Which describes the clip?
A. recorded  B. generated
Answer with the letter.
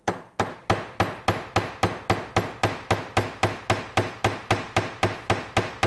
A